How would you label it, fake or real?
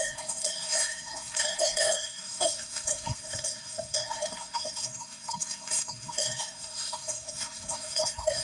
fake